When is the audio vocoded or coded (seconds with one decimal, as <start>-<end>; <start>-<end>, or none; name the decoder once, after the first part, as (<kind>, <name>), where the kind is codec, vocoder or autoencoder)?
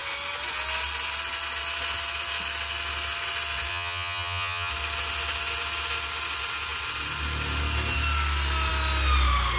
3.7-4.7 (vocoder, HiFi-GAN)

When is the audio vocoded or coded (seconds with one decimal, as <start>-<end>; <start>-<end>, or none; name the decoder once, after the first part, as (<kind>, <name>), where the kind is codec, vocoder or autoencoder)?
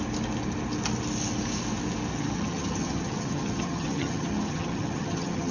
2.1-5.5 (vocoder, HiFi-GAN)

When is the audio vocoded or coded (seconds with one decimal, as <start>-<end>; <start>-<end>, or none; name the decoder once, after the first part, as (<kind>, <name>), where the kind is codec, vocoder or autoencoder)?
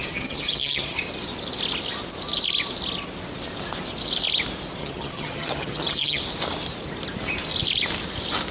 0.0-1.0 (vocoder, HiFi-GAN); 4.8-6.2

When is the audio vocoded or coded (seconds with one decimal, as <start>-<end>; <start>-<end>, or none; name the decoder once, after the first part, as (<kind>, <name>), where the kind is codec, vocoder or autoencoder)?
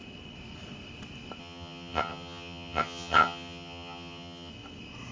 1.4-4.5 (vocoder, HiFi-GAN)